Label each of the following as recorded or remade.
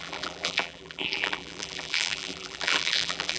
remade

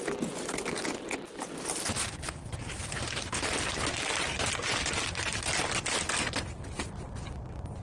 recorded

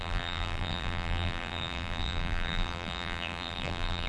remade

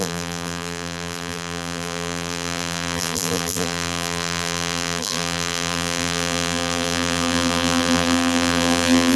remade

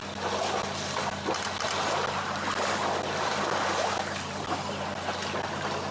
recorded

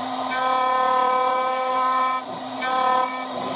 remade